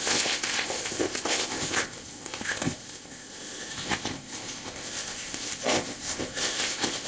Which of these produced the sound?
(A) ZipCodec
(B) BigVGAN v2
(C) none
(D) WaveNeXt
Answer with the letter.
A